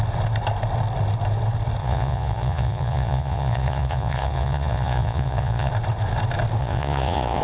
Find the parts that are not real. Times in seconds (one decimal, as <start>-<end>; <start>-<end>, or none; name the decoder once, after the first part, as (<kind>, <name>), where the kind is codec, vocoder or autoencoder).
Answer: 1.8-5.7 (vocoder, Vocos); 6.6-7.4